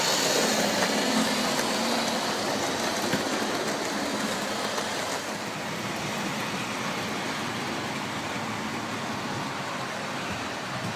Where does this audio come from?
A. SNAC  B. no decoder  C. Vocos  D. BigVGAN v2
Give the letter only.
B